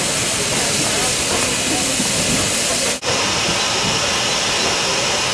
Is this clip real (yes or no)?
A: yes